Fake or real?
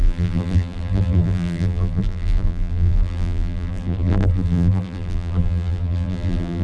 fake